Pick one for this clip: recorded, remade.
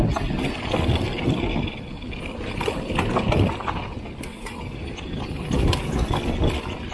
recorded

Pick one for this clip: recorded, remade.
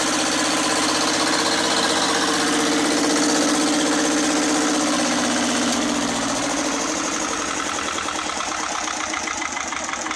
recorded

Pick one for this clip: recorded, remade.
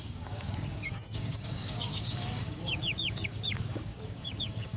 remade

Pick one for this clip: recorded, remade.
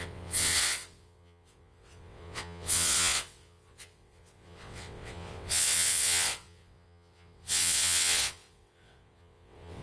remade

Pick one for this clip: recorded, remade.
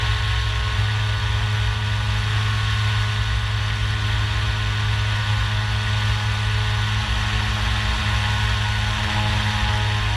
recorded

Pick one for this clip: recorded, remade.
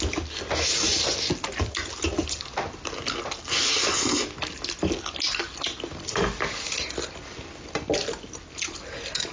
recorded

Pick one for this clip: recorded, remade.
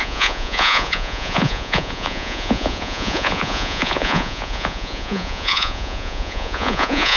remade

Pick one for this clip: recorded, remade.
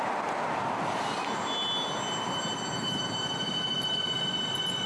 recorded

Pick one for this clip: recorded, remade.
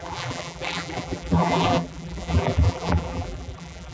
remade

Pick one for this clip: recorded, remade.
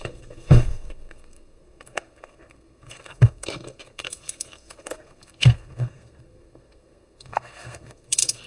remade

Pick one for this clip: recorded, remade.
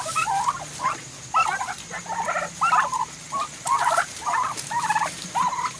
recorded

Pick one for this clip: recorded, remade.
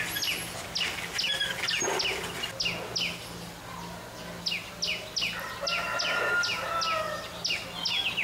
recorded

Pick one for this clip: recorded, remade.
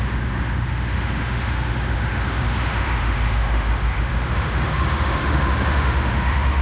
remade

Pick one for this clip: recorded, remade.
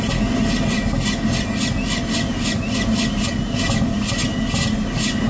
recorded